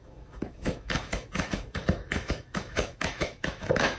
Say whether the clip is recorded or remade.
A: remade